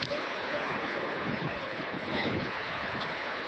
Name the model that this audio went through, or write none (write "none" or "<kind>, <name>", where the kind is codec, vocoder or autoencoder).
codec, HILCodec